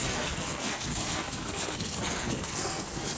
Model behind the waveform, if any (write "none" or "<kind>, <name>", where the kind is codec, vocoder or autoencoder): codec, SNAC